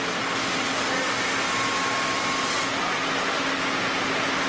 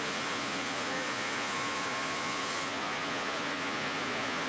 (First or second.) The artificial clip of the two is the second